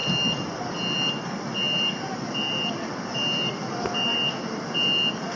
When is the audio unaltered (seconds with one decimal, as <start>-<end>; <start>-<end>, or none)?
0.0-5.4